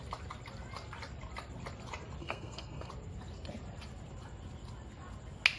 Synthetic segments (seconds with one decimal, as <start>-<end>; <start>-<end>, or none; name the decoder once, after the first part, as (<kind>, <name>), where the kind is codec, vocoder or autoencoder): 2.2-2.9 (codec, SNAC)